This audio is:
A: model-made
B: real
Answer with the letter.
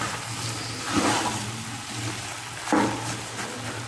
B